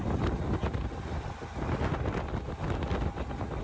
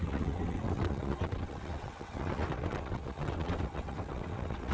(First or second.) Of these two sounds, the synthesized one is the second